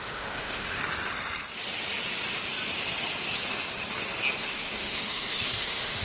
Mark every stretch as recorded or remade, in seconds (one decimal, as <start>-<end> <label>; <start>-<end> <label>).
0.0-0.8 remade; 0.8-4.4 recorded; 4.4-6.0 remade